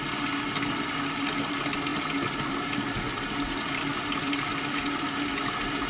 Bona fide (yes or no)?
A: yes